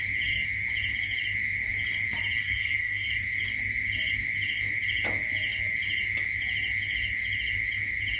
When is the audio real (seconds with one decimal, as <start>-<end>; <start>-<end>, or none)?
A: 0.0-2.4; 3.1-8.2

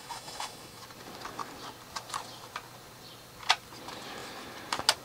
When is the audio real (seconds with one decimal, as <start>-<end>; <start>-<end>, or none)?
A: 0.8-5.0

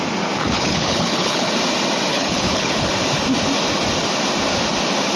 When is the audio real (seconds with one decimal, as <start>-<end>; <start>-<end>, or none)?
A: 0.0-0.4; 1.5-2.1; 2.9-5.2

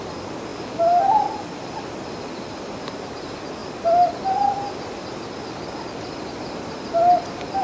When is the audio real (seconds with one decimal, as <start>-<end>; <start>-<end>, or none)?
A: 0.0-7.6

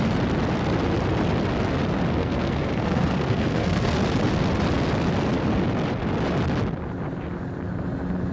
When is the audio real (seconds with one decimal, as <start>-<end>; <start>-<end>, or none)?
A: 0.0-2.2; 4.0-8.3